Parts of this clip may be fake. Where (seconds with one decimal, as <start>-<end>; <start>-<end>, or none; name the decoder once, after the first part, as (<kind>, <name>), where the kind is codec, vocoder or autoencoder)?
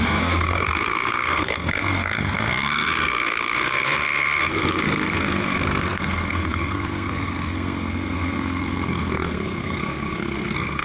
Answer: 0.0-10.8 (codec, SNAC)